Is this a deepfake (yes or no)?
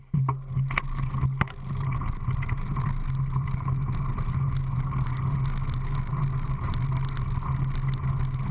no